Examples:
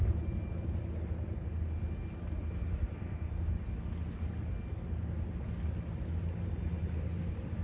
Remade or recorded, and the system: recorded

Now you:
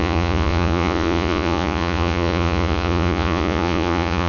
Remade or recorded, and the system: remade, vocoder, Vocos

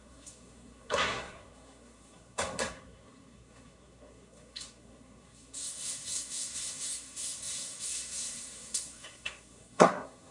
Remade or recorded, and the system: remade, codec, SNAC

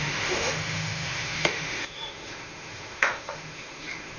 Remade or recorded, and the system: remade, autoencoder, DAC-VAE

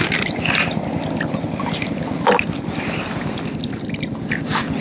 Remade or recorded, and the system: recorded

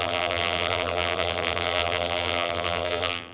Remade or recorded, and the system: remade, vocoder, BigVGAN v2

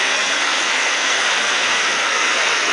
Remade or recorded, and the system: remade, codec, SNAC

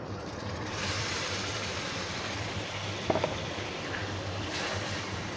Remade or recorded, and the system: remade, vocoder, BigVGAN v2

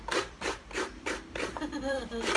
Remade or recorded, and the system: remade, vocoder, BigVGAN v2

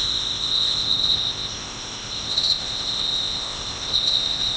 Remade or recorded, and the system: remade, codec, ZipCodec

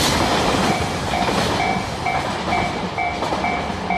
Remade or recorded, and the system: recorded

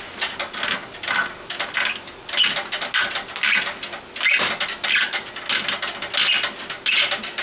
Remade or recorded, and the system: recorded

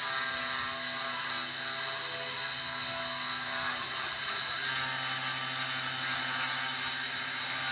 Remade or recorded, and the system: recorded